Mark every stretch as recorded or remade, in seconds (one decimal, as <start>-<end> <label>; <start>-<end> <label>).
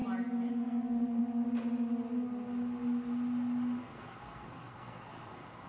0.0-0.5 recorded; 0.5-1.2 remade; 1.2-3.8 recorded; 3.8-5.7 remade